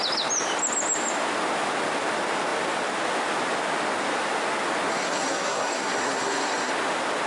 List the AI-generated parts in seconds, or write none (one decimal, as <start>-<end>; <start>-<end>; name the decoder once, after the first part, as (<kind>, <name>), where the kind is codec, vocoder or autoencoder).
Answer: 4.9-6.7 (codec, SNAC)